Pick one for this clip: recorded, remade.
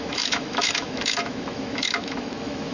remade